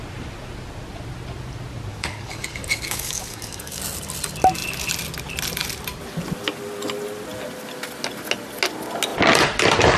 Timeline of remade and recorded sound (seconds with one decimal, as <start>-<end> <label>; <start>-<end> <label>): 0.0-1.9 recorded; 1.9-3.8 remade; 3.8-10.0 recorded